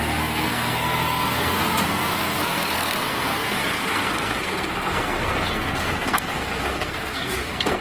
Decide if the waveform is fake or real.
fake